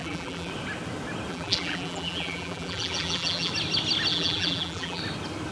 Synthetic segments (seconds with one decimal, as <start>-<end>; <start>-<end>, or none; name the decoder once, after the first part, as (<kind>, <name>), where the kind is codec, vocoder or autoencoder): 0.0-0.5 (vocoder, BigVGAN v2); 1.3-3.5; 4.1-5.0